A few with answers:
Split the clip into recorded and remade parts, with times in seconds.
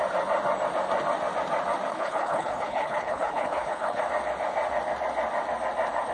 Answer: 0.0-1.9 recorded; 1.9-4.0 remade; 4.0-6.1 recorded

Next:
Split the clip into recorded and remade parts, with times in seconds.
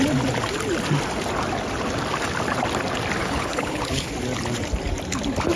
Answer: 0.0-3.2 recorded; 3.2-4.1 remade; 4.1-5.6 recorded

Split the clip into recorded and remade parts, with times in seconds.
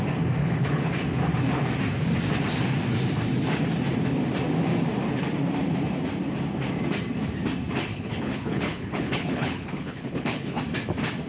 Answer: 0.0-0.4 recorded; 0.4-0.9 remade; 0.9-7.9 recorded; 7.9-10.6 remade; 10.6-11.3 recorded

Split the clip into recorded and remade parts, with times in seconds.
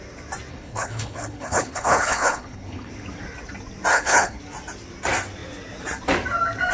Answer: 0.0-0.5 recorded; 0.5-2.9 remade; 2.9-3.9 recorded; 3.9-4.4 remade; 4.4-6.7 recorded